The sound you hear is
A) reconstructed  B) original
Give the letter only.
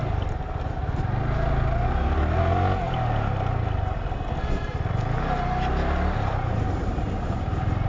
B